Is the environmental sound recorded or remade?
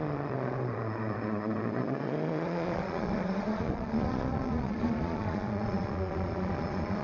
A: remade